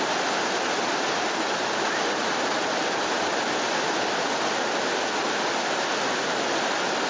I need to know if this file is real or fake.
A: real